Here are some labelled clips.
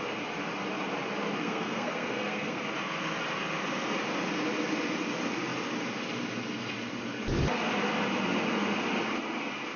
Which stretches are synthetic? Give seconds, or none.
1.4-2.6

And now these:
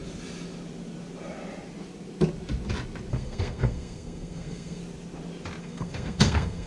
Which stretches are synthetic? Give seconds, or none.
3.1-4.8; 5.6-6.7

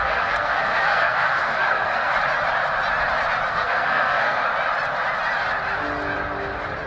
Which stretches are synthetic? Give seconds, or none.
0.0-2.1; 3.5-4.4

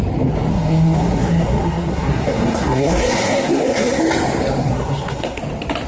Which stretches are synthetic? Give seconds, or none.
0.5-4.0; 4.6-5.4

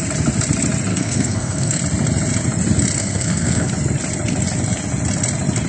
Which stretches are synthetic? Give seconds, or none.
0.9-1.8; 3.0-3.7

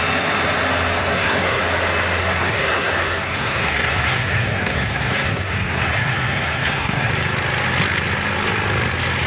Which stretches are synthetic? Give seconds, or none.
1.0-1.6; 2.2-7.1

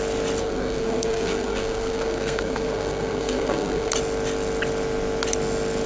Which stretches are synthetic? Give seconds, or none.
0.4-3.9